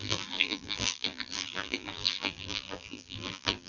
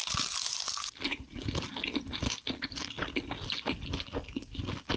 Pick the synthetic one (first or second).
first